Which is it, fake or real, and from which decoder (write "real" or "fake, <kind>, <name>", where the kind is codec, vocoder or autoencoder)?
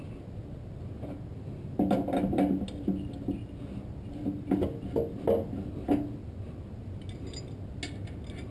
real